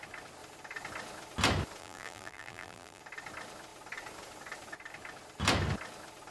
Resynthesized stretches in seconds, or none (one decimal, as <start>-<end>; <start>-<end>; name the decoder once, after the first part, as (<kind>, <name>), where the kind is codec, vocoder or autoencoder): 1.8-3.0 (vocoder, BigVGAN v2)